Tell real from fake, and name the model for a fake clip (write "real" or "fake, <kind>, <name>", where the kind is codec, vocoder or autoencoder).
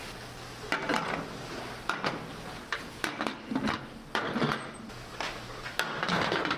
real